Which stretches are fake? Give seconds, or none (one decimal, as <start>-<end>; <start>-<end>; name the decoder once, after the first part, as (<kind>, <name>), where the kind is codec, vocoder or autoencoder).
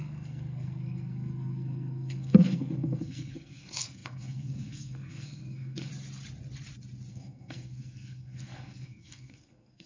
0.0-5.9 (codec, SNAC); 7.1-9.9